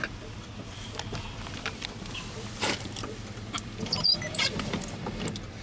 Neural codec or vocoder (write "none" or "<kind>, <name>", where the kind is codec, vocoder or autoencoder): vocoder, BigVGAN v2